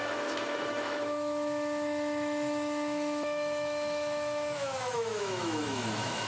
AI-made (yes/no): yes